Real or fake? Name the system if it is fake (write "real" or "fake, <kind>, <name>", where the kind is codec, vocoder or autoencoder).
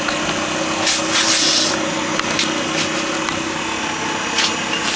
real